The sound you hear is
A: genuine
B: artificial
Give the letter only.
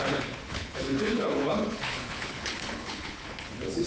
B